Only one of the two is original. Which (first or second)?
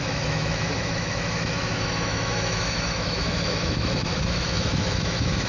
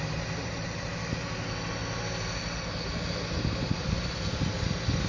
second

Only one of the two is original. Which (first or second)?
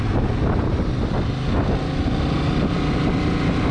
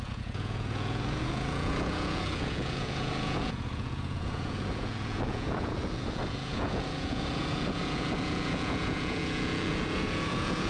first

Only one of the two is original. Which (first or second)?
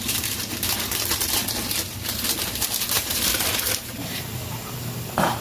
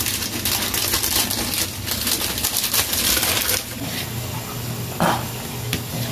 second